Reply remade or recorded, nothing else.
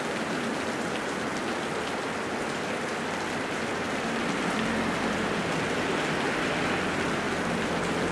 recorded